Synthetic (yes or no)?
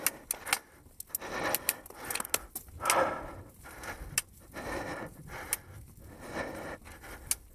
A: no